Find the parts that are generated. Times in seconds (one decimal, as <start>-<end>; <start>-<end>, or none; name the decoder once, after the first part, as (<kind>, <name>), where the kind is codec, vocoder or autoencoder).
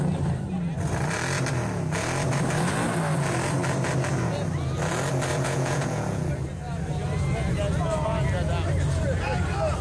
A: 5.3-6.3 (vocoder, Vocos)